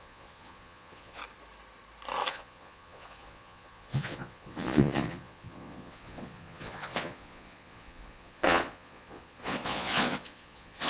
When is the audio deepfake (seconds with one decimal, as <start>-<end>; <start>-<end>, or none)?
0.0-1.2; 2.3-10.9